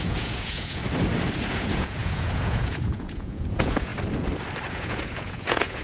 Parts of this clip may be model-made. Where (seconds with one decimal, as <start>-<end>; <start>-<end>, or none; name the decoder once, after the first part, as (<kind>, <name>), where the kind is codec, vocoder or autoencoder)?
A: 0.0-0.8 (vocoder, Vocos); 1.5-3.9; 4.7-5.8